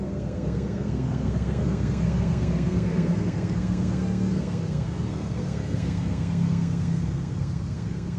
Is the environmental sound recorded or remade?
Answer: remade